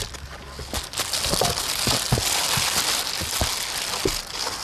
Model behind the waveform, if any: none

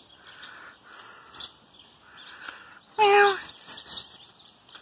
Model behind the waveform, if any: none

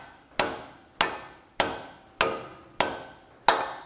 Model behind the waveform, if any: none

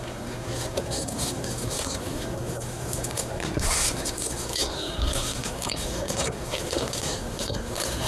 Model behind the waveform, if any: codec, SNAC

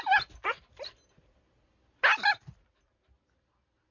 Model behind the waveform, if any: none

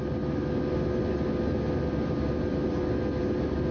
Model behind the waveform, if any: none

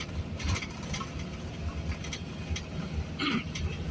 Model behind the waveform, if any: vocoder, BigVGAN v2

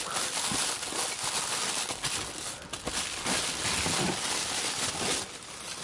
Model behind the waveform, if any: none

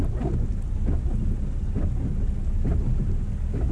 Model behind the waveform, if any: none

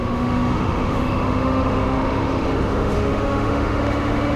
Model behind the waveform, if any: autoencoder, DAC-VAE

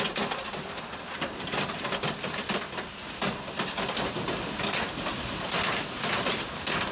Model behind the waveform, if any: none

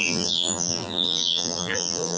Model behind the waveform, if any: vocoder, BigVGAN v2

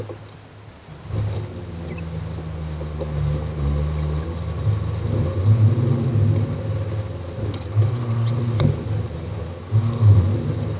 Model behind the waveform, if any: none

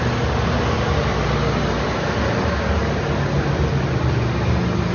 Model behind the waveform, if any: none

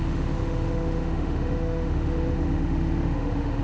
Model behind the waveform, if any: autoencoder, DAC-VAE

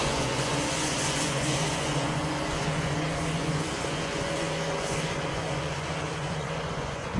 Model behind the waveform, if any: vocoder, Vocos